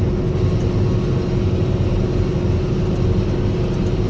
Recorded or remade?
recorded